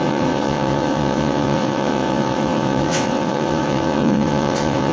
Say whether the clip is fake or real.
fake